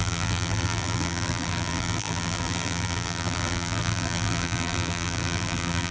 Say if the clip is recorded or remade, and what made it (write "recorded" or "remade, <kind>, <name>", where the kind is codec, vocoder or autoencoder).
remade, vocoder, BigVGAN v2